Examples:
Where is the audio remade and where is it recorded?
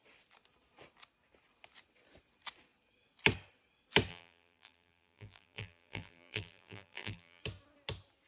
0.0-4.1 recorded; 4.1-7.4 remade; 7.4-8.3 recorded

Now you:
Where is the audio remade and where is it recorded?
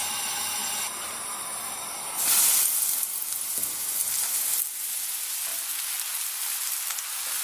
0.0-5.5 recorded; 5.5-6.1 remade; 6.1-7.4 recorded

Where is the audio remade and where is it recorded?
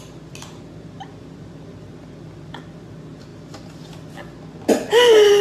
0.0-5.4 recorded